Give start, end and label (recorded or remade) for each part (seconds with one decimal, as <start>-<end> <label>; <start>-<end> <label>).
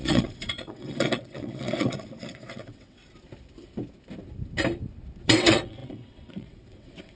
0.0-3.0 remade; 3.0-5.2 recorded; 5.2-7.2 remade